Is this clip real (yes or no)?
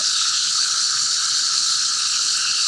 no